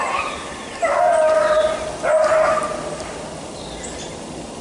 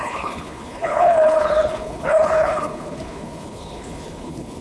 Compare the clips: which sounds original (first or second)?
first